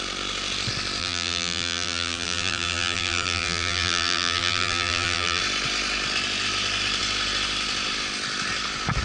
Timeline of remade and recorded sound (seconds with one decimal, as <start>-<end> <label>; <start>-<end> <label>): 0.0-1.0 recorded; 1.0-5.4 remade; 5.4-9.0 recorded

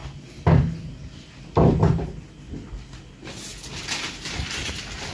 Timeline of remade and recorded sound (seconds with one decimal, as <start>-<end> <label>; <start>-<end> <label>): 0.0-5.1 recorded

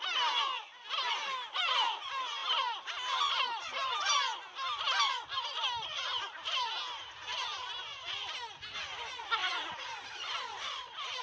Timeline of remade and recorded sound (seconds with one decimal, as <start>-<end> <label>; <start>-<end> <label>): 0.0-9.4 recorded; 9.4-11.2 remade

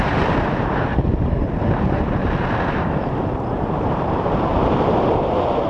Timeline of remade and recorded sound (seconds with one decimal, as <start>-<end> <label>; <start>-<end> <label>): 0.0-5.7 remade

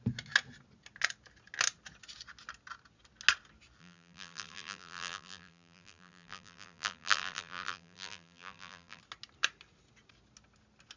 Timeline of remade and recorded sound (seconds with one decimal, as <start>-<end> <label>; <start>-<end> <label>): 0.0-3.8 recorded; 3.8-9.0 remade; 9.0-11.0 recorded

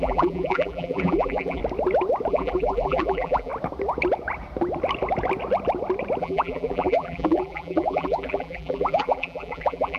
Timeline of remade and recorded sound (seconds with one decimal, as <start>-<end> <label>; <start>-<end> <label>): 0.0-1.6 remade; 1.6-2.3 recorded; 2.3-3.5 remade; 3.5-6.2 recorded; 6.2-10.0 remade

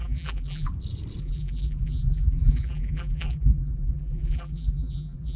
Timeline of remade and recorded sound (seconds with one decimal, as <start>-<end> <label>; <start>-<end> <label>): 0.0-0.7 remade; 0.7-1.2 recorded; 1.2-5.4 remade